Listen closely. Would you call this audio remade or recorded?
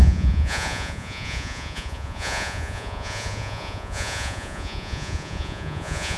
remade